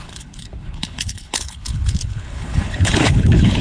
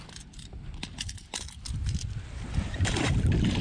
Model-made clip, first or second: first